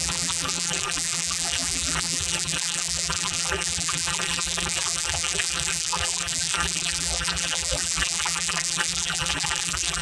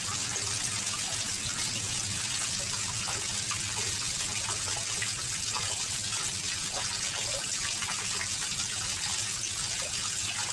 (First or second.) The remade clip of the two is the first